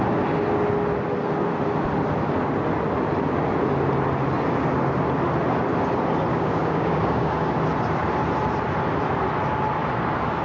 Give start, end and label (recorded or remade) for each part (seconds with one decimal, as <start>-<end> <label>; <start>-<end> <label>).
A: 0.0-6.3 recorded; 6.3-7.5 remade; 7.5-10.4 recorded